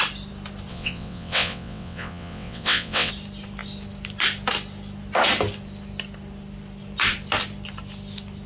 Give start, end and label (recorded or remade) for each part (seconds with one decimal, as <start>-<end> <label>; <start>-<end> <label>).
0.0-0.7 recorded; 0.7-3.1 remade; 3.1-8.5 recorded